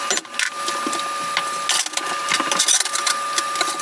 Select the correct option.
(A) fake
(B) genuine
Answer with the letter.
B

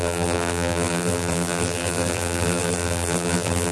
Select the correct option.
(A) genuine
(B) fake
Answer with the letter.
B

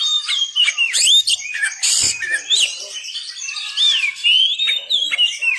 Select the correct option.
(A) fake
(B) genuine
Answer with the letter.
A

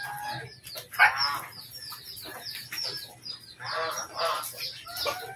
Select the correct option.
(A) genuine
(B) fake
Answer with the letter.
A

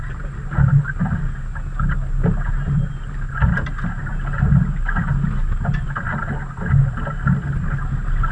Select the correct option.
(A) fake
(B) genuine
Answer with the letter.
B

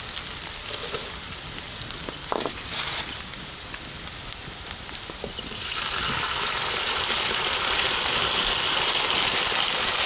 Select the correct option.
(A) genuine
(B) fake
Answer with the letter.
B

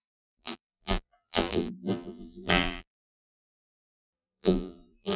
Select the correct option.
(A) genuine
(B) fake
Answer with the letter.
B